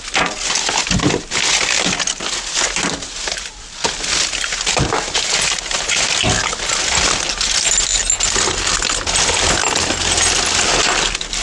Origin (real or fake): real